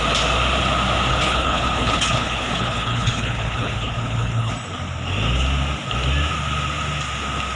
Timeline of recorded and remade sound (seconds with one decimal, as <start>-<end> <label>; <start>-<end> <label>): 0.0-1.1 recorded; 1.1-4.5 remade; 4.5-7.6 recorded